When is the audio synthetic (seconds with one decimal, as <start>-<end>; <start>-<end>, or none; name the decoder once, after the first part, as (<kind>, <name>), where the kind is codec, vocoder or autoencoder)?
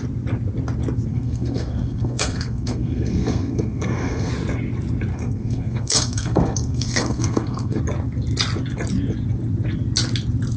1.1-4.3 (codec, SNAC); 5.1-7.8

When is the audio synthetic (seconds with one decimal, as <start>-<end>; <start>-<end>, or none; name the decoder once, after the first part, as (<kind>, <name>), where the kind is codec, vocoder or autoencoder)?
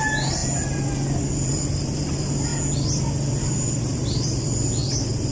0.0-0.4 (vocoder, BigVGAN v2); 1.2-2.5; 3.4-4.8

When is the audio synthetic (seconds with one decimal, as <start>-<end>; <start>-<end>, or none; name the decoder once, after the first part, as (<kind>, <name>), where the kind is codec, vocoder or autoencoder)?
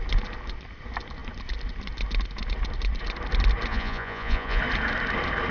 3.7-4.6 (vocoder, Vocos)